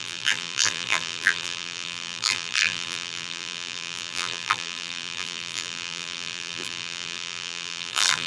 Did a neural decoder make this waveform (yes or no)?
yes